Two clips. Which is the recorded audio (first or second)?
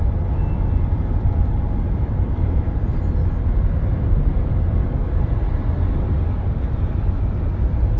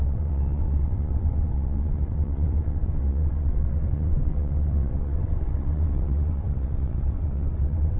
first